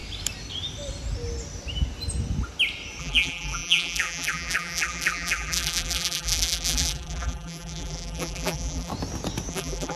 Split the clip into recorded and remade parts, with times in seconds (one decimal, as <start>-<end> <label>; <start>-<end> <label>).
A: 0.0-3.0 recorded; 3.0-8.9 remade; 8.9-9.5 recorded; 9.5-10.0 remade

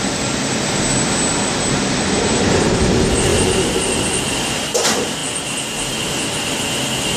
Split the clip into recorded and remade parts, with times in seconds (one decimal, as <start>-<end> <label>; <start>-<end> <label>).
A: 0.0-3.3 remade; 3.3-4.5 recorded; 4.5-5.2 remade; 5.2-6.4 recorded; 6.4-7.2 remade

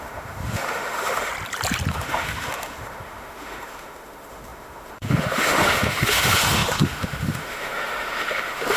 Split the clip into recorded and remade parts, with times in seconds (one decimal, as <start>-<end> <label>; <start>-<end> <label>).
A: 0.0-1.3 remade; 1.3-1.9 recorded; 1.9-8.8 remade

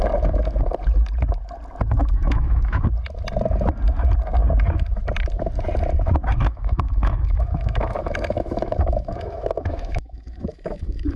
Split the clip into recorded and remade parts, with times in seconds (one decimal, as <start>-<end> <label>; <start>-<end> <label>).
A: 0.0-2.0 recorded; 2.0-2.8 remade; 2.8-6.5 recorded; 6.5-11.2 remade

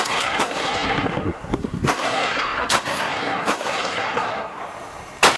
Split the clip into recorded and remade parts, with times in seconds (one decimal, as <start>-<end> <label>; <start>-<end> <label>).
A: 0.0-4.6 remade; 4.6-5.4 recorded